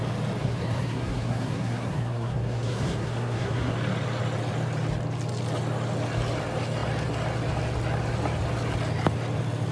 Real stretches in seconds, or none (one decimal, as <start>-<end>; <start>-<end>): 0.0-0.4; 3.7-9.7